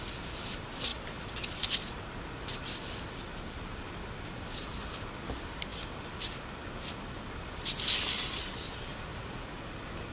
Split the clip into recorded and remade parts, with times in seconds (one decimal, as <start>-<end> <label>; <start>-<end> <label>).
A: 0.0-9.1 recorded; 9.1-9.7 remade; 9.7-10.1 recorded